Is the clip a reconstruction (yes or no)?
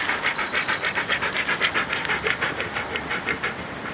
no